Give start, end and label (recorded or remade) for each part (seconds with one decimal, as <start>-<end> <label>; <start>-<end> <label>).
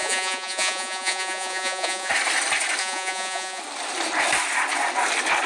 0.0-2.1 remade; 2.1-2.8 recorded; 2.8-3.6 remade; 3.6-5.5 recorded